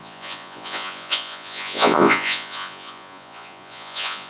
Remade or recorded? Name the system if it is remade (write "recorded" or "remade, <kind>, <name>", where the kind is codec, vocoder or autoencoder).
remade, vocoder, Vocos